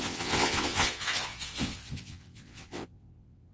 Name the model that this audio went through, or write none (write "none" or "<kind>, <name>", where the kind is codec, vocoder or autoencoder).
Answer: vocoder, WaveNeXt